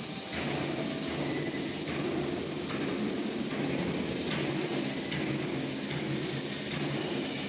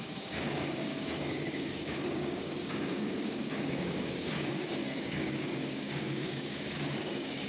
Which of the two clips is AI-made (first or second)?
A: second